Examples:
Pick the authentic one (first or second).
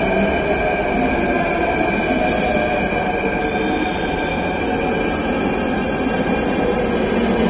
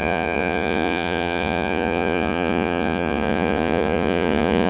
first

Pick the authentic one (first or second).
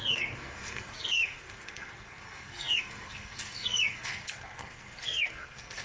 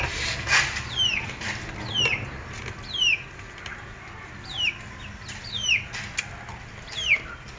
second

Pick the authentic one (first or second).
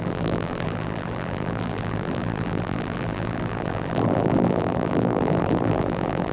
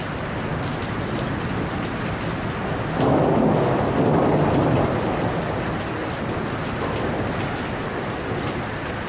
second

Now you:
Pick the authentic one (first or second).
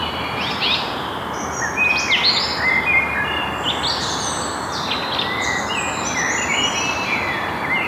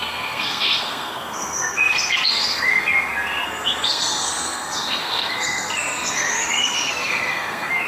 first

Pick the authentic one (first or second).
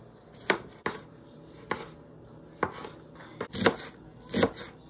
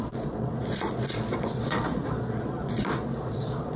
first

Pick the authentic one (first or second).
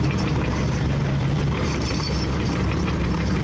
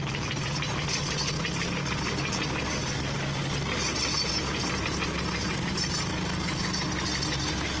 second